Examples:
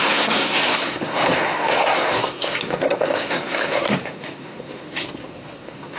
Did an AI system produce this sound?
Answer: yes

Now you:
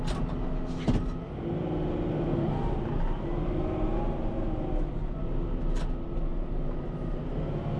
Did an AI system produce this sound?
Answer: no